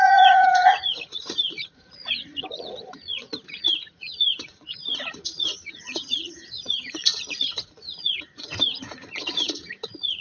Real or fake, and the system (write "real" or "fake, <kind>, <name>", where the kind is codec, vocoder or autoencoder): fake, vocoder, Vocos